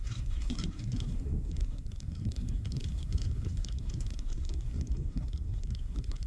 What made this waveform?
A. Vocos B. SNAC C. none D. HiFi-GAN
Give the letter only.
B